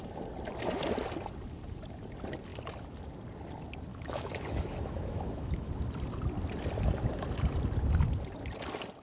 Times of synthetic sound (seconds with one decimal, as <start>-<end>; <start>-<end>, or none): 3.9-5.7